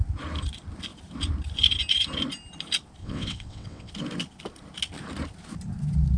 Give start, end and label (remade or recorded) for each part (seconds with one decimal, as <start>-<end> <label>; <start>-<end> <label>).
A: 0.0-3.0 recorded; 3.0-3.9 remade; 3.9-6.2 recorded